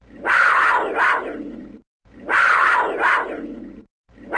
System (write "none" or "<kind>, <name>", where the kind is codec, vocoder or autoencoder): vocoder, BigVGAN v2